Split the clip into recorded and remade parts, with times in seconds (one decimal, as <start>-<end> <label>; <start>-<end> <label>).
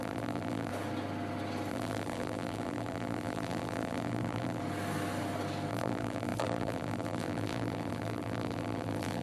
0.0-0.7 remade; 0.7-1.7 recorded; 1.7-4.6 remade; 4.6-5.7 recorded; 5.7-9.2 remade